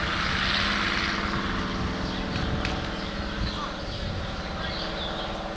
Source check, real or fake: real